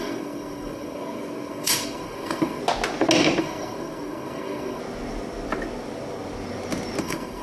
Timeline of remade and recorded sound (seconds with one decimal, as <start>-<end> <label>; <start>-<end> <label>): 0.0-2.6 remade; 2.6-3.4 recorded; 3.4-4.8 remade; 4.8-7.0 recorded; 7.0-7.4 remade